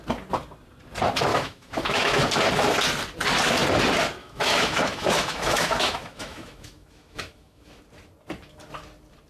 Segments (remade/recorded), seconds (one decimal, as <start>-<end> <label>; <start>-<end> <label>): 0.0-1.3 recorded; 1.3-2.2 remade; 2.2-4.2 recorded; 4.2-7.8 remade; 7.8-9.3 recorded